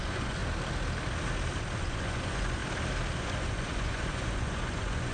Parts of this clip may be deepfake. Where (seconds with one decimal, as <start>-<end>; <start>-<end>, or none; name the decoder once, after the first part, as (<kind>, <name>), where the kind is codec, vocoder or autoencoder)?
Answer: 0.0-0.4 (vocoder, Vocos); 1.8-2.6; 3.2-5.1